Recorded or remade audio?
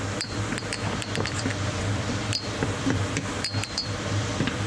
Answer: remade